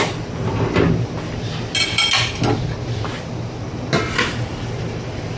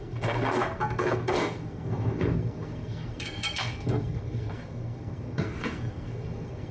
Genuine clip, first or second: first